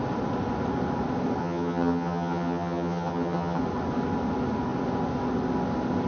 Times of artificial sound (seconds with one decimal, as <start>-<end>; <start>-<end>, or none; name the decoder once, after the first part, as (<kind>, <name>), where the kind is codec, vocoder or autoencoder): 1.4-3.6 (vocoder, HiFi-GAN)